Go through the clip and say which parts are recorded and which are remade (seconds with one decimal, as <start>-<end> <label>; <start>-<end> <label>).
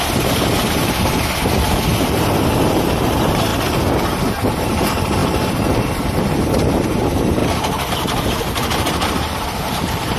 0.0-3.5 remade; 3.5-4.5 recorded; 4.5-10.2 remade